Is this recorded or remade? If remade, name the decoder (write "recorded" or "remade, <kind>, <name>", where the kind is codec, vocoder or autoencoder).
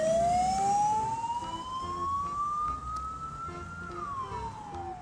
recorded